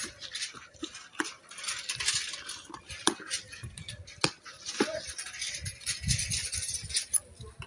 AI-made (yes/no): no